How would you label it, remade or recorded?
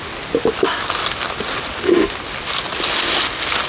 recorded